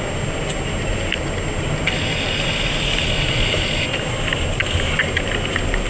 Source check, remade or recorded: recorded